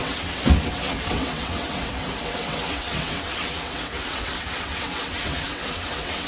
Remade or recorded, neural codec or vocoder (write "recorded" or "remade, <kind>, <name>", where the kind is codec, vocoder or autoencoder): remade, vocoder, WaveNeXt